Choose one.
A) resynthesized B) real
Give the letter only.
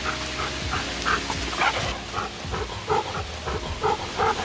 B